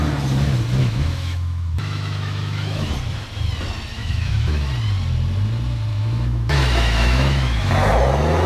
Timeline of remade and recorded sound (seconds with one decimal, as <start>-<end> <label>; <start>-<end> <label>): 0.0-0.8 recorded; 0.8-2.9 remade; 2.9-4.0 recorded; 4.0-4.7 remade; 4.7-5.9 recorded; 5.9-7.7 remade; 7.7-8.5 recorded